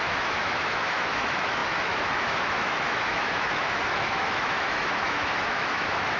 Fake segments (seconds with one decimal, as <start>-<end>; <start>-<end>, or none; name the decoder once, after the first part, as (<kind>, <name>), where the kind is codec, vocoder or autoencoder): 0.0-6.2 (autoencoder, DAC-VAE)